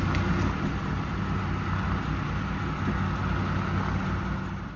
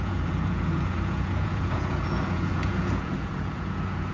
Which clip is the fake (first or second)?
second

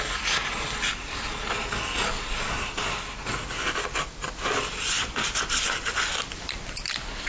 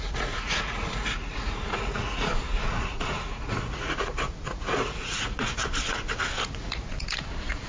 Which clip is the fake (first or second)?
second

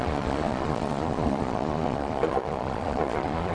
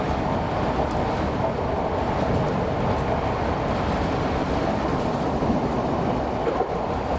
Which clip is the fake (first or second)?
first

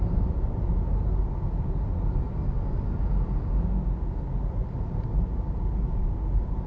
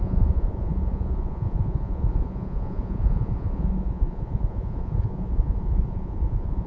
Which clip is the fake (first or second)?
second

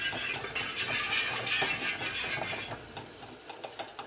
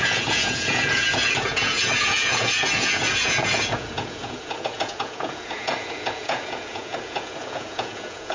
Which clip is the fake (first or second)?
second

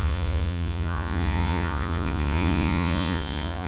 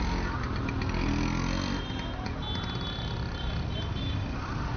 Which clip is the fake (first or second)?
first